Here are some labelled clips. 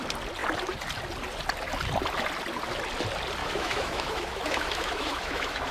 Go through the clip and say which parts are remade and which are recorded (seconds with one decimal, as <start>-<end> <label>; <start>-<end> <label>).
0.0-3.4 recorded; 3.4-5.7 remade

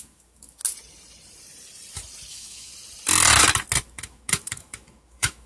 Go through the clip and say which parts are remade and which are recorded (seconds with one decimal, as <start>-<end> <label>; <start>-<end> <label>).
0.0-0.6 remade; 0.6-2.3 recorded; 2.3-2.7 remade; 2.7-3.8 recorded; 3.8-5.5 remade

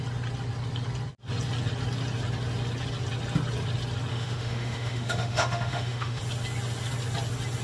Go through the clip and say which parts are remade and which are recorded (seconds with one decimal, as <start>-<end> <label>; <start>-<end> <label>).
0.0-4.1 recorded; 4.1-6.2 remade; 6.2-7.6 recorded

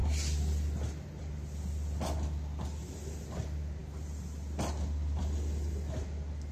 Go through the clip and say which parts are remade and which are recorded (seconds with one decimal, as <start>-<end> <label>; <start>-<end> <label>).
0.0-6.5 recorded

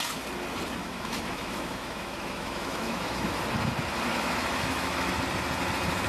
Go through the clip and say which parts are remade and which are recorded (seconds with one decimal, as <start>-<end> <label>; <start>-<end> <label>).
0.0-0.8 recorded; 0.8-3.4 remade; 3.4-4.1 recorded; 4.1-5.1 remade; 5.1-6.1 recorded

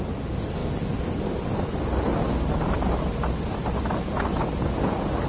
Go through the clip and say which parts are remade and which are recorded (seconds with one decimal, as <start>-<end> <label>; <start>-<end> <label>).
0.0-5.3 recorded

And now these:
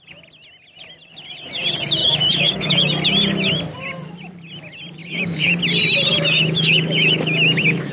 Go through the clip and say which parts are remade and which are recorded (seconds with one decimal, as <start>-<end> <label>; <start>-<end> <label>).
0.0-2.0 recorded; 2.0-2.8 remade; 2.8-5.0 recorded; 5.0-5.6 remade; 5.6-6.1 recorded; 6.1-7.9 remade